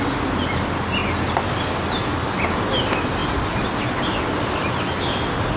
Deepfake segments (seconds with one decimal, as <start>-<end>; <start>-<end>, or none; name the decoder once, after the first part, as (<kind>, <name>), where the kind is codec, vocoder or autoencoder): none